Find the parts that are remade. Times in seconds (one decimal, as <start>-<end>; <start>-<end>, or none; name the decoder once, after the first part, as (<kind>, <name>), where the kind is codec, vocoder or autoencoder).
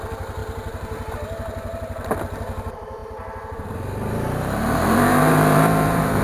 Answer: 0.0-6.2 (vocoder, BigVGAN v2)